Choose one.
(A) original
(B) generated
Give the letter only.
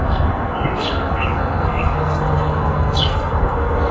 B